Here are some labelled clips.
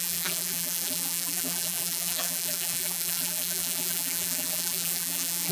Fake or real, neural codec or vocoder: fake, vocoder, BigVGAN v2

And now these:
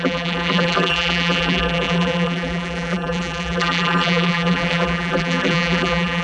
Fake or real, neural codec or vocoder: fake, vocoder, BigVGAN v2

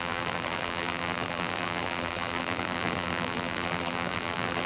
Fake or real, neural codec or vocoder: fake, vocoder, BigVGAN v2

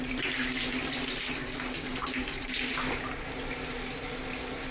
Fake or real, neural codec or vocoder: real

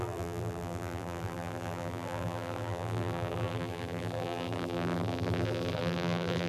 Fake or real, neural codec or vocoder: fake, vocoder, BigVGAN v2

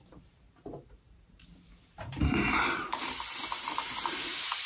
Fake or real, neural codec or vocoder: fake, vocoder, BigVGAN v2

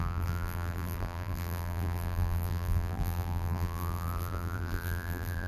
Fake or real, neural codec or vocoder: fake, vocoder, BigVGAN v2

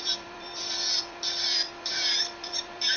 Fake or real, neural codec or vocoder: fake, vocoder, BigVGAN v2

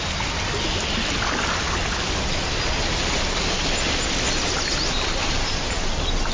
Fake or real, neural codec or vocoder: real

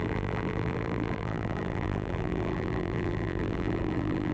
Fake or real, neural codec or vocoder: fake, vocoder, BigVGAN v2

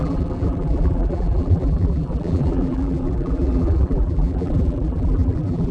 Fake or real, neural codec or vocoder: fake, vocoder, BigVGAN v2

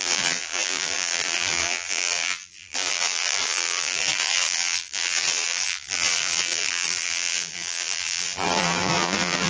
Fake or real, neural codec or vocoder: fake, vocoder, BigVGAN v2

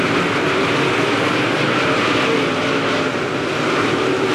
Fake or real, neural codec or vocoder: real